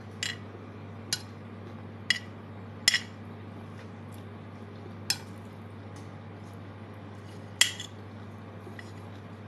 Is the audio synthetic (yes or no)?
no